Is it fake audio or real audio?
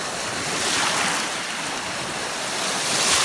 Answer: fake